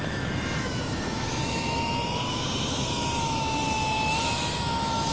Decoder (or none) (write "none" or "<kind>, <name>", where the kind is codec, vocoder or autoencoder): autoencoder, DAC-VAE